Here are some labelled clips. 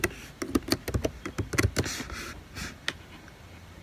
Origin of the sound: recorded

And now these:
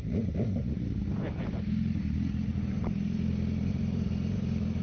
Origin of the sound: remade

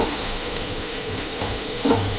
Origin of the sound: remade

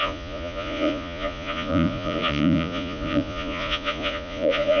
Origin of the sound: remade